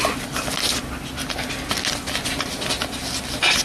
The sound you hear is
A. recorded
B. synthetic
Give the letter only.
A